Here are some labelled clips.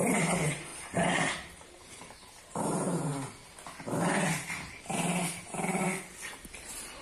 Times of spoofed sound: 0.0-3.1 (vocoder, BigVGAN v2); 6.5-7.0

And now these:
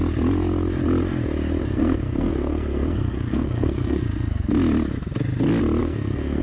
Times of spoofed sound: 1.6-4.5 (codec, SNAC); 5.8-6.4

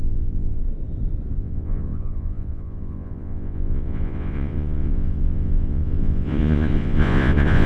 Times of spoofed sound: 0.0-0.6 (vocoder, Vocos); 1.4-7.7

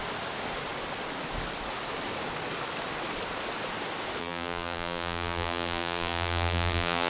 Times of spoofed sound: 4.2-7.1 (vocoder, BigVGAN v2)

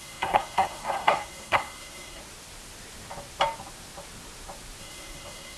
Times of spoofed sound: 0.0-2.2 (codec, SNAC); 4.8-5.6

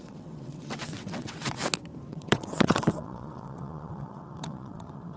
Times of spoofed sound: 0.0-1.6 (vocoder, WaveNeXt); 2.1-5.2

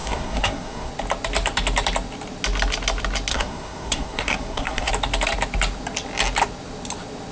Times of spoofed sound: 0.0-0.9 (codec, SNAC); 3.3-4.9

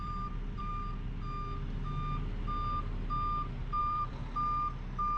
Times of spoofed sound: 0.0-0.7 (vocoder, BigVGAN v2); 3.8-4.2